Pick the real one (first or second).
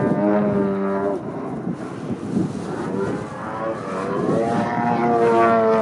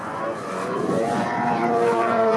first